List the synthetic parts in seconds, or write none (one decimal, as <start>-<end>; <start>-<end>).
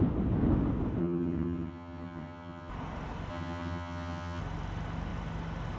1.0-2.7; 3.3-4.4